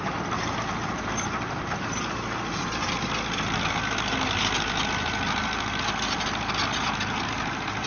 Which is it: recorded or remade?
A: recorded